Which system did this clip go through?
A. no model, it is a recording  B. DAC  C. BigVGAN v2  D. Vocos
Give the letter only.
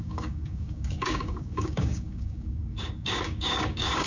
B